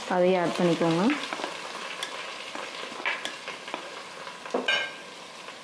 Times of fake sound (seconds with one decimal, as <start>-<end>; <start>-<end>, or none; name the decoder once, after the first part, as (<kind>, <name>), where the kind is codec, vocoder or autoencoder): none